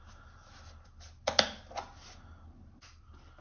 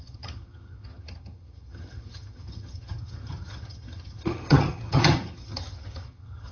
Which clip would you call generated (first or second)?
second